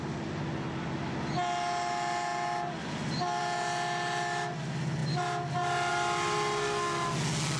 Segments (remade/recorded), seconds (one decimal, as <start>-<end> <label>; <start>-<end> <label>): 0.0-7.6 recorded